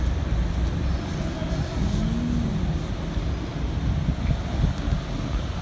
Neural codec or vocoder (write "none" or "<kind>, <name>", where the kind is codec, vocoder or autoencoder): none